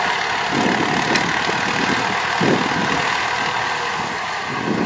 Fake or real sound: real